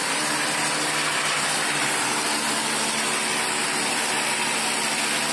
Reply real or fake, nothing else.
real